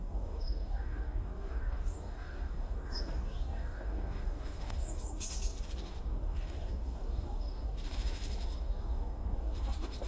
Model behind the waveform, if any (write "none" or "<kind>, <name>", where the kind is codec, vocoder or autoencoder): codec, DAC